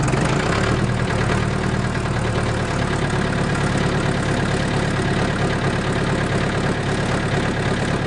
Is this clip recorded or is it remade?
recorded